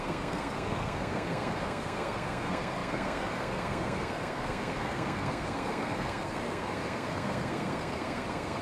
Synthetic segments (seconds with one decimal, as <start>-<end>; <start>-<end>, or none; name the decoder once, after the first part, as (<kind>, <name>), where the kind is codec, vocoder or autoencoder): 0.0-8.6 (codec, SNAC)